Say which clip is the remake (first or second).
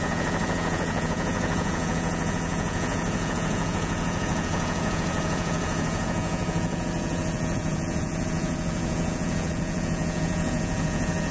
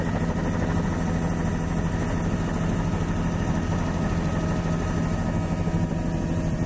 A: first